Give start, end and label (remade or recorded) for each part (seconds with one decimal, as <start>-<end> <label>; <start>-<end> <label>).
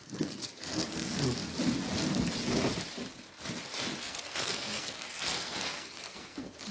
0.0-1.4 remade; 1.4-4.0 recorded; 4.0-6.7 remade